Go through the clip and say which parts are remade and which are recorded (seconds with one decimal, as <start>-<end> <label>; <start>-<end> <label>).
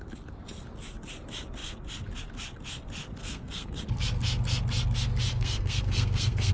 0.0-3.2 recorded; 3.2-3.8 remade; 3.8-5.3 recorded; 5.3-6.5 remade